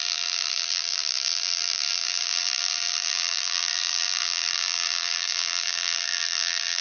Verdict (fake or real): fake